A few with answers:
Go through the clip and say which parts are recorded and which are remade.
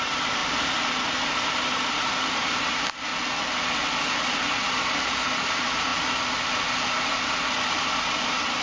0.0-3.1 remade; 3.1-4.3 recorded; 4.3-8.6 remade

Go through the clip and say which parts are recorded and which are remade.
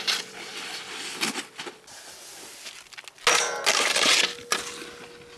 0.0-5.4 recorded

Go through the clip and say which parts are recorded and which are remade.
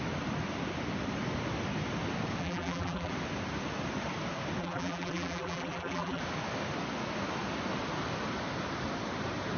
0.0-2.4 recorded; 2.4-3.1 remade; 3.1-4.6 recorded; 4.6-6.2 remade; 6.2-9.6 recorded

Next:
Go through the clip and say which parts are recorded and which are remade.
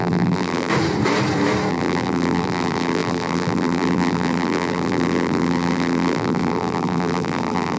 0.0-0.7 remade; 0.7-1.7 recorded; 1.7-7.8 remade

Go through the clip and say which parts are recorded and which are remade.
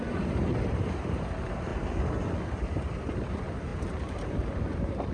0.0-1.7 remade; 1.7-2.5 recorded; 2.5-5.1 remade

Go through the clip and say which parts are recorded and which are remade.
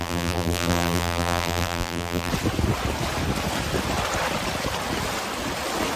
0.0-2.3 remade; 2.3-6.0 recorded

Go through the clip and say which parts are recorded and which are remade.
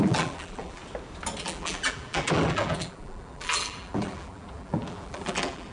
0.0-0.8 remade; 0.8-1.4 recorded; 1.4-5.7 remade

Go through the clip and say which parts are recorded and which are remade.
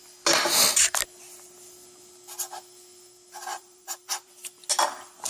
0.0-3.5 recorded; 3.5-4.3 remade; 4.3-5.3 recorded